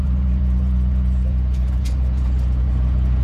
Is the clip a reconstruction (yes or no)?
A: yes